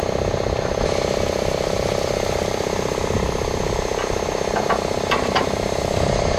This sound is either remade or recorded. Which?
recorded